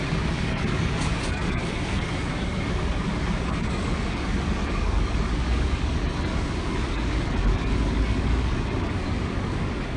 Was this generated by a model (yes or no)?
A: yes